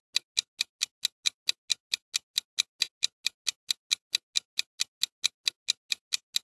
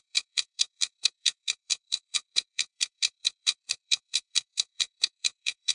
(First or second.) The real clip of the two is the first